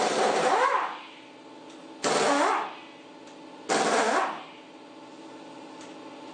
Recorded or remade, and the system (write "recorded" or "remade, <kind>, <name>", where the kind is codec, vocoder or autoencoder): recorded